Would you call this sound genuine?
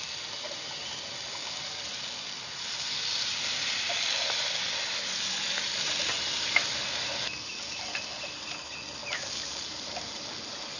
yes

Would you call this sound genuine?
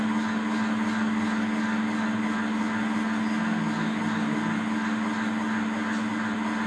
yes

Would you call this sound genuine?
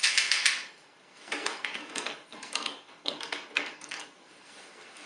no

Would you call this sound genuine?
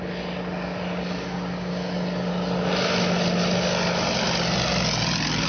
yes